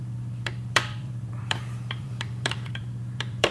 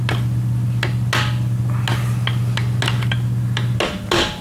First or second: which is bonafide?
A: second